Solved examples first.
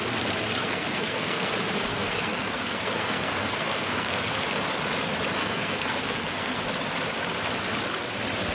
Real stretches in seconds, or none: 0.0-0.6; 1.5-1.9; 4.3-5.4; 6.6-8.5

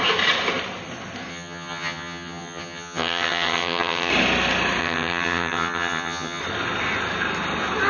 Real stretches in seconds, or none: 0.0-1.3; 4.1-4.8; 6.4-7.9

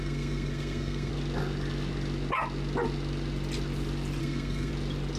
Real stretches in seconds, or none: 1.1-4.2; 4.7-5.2

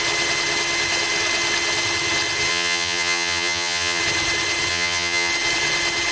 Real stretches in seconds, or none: 0.0-2.5; 4.0-4.7; 5.3-6.1